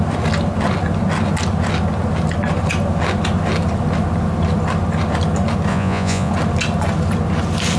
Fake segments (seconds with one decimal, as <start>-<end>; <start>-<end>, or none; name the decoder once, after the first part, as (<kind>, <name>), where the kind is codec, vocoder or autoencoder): 5.7-6.3 (vocoder, Vocos)